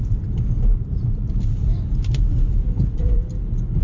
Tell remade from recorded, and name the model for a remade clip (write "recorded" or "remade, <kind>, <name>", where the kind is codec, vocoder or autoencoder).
remade, vocoder, BigVGAN v2